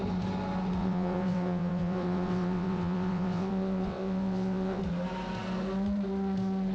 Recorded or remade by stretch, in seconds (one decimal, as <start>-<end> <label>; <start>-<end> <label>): 0.0-0.8 recorded; 0.8-4.8 remade; 4.8-6.7 recorded